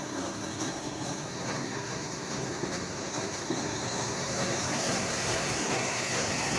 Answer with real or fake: fake